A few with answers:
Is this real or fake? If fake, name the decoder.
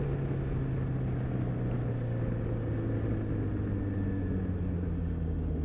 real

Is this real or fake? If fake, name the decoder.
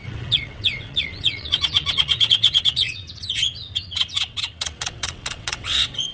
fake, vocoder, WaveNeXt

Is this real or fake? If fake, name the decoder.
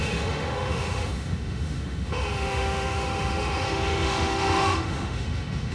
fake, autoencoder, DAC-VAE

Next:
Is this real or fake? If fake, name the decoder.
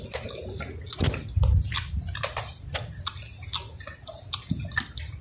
real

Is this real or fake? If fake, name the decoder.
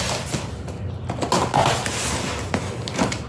real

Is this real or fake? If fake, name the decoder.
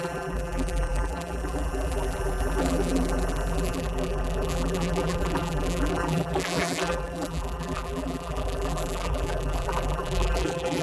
fake, vocoder, BigVGAN v2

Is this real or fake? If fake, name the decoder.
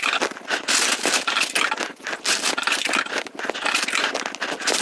real